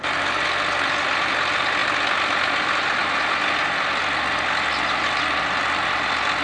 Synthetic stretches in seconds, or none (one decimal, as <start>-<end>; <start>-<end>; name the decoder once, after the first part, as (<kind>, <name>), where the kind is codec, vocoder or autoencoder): none